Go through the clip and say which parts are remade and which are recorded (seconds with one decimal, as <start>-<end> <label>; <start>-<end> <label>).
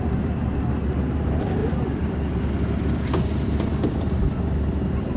0.0-0.5 remade; 0.5-1.2 recorded; 1.2-5.2 remade